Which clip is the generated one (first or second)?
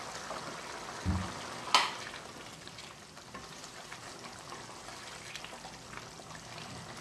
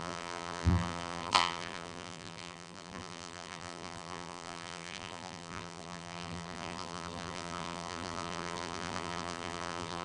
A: second